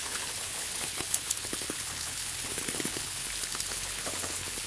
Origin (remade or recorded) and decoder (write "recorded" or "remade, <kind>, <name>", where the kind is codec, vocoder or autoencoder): remade, codec, HILCodec